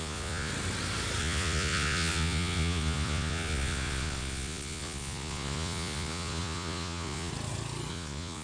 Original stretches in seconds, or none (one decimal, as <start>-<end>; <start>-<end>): 0.5-1.2; 7.3-7.9